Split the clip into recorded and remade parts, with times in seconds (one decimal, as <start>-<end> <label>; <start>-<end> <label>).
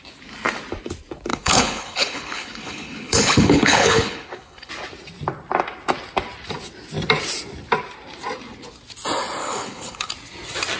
0.0-1.3 recorded; 1.3-4.7 remade; 4.7-9.4 recorded; 9.4-10.1 remade; 10.1-10.8 recorded